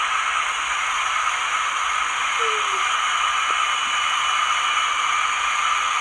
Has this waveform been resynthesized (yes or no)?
no